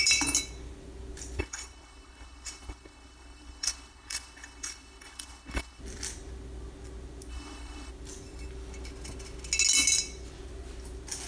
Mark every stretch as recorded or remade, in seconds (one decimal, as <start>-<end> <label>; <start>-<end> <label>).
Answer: 0.0-1.4 recorded; 1.4-5.8 remade; 5.8-7.3 recorded; 7.3-7.9 remade; 7.9-11.3 recorded